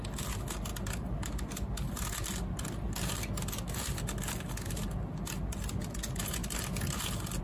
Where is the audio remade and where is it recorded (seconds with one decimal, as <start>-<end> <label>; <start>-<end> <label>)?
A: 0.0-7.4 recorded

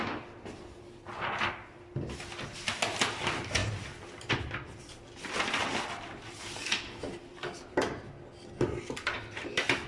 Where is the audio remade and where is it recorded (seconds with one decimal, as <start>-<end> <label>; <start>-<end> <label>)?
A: 0.0-9.9 recorded

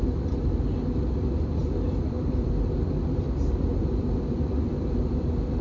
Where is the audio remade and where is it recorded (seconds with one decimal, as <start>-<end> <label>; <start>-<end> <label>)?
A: 0.0-1.6 recorded; 1.6-2.5 remade; 2.5-3.8 recorded; 3.8-5.6 remade

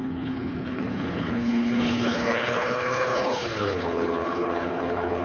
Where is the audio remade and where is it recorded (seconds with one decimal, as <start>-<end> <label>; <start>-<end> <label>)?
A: 0.0-5.2 remade